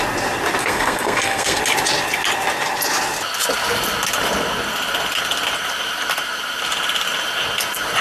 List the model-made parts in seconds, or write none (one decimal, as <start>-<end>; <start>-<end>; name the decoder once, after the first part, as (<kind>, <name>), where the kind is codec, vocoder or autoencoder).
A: 0.6-1.6 (codec, SNAC)